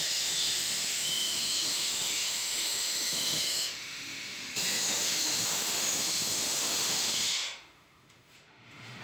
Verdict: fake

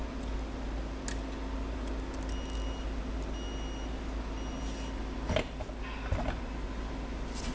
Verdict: real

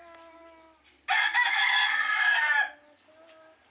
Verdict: real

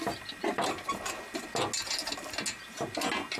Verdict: real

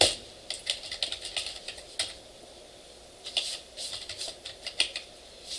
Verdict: real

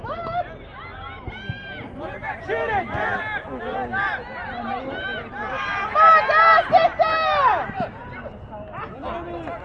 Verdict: real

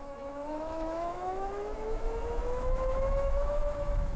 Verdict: fake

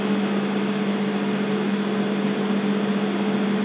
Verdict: real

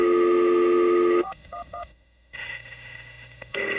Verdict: fake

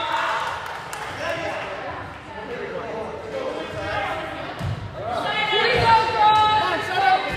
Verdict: real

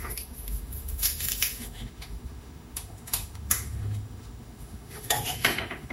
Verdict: fake